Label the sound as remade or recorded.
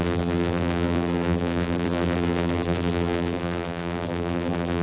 remade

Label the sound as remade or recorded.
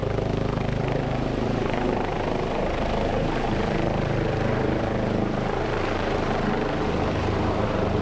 remade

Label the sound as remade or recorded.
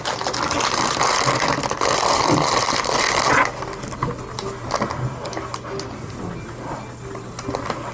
recorded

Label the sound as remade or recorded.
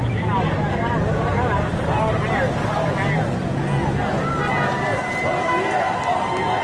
recorded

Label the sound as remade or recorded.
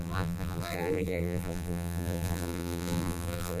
remade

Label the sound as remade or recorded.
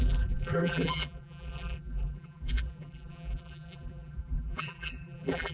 remade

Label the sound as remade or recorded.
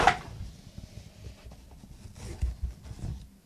recorded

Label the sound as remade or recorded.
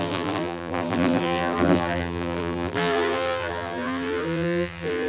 remade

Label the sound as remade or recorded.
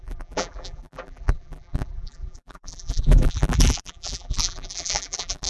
remade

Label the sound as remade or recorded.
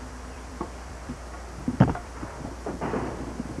remade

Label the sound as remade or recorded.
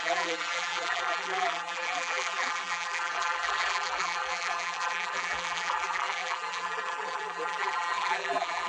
remade